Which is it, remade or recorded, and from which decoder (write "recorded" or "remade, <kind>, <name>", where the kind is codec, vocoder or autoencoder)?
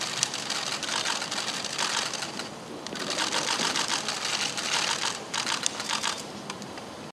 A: recorded